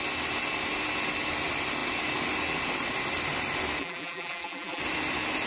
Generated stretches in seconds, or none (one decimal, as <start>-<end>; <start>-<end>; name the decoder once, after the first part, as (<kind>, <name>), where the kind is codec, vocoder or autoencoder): 3.8-4.8 (vocoder, BigVGAN v2)